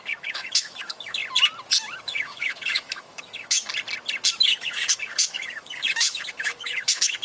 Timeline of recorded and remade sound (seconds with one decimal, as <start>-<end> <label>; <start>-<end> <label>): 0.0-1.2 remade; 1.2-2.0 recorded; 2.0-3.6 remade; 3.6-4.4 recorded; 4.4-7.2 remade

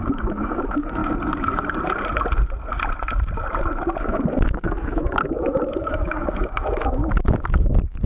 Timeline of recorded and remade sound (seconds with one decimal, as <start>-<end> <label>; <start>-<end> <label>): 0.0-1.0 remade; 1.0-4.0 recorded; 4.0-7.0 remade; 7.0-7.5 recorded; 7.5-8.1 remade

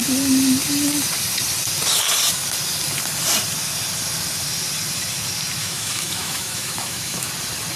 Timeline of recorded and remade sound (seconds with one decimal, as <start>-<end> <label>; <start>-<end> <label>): 0.0-5.6 recorded; 5.6-7.3 remade; 7.3-7.8 recorded

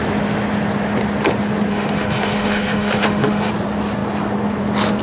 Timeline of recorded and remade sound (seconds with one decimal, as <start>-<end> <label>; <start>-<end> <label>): 0.0-1.7 recorded; 1.7-3.5 remade; 3.5-5.0 recorded

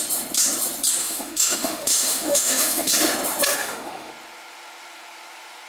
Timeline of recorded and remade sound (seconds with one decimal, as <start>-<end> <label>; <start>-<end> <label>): 0.0-1.0 recorded; 1.0-2.9 remade; 2.9-3.5 recorded; 3.5-4.1 remade; 4.1-5.7 recorded